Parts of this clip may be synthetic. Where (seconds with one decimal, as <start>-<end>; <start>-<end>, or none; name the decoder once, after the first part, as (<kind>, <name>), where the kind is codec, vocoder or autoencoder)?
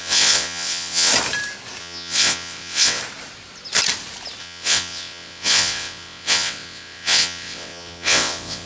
0.0-1.1 (vocoder, WaveNeXt); 1.8-3.0; 4.4-8.7